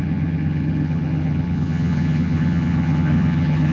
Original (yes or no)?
no